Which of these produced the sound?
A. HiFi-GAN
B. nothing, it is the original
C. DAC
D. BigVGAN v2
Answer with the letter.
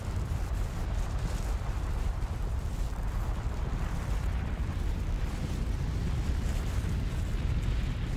D